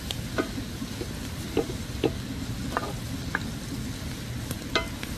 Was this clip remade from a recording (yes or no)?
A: no